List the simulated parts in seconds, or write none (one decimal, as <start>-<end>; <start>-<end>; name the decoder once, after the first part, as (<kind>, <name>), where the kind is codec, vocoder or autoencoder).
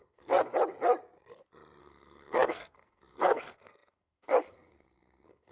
0.0-0.5 (codec, SNAC); 1.8-5.5